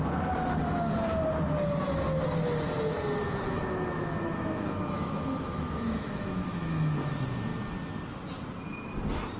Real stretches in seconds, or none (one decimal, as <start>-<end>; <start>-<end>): 0.0-3.2; 7.1-9.4